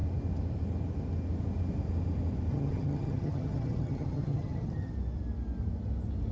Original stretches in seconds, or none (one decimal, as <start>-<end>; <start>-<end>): 0.0-2.5; 4.9-6.3